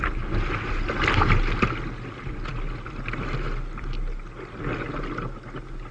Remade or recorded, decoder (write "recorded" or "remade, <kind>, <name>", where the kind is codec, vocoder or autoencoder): recorded